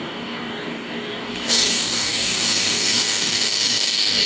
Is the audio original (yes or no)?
no